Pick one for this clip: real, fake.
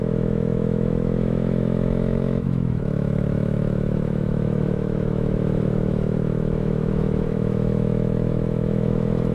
fake